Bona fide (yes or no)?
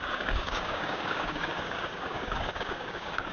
no